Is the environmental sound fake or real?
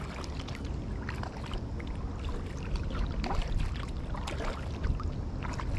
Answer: real